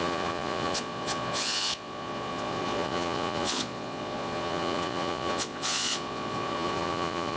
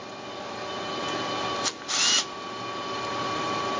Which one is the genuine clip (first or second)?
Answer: second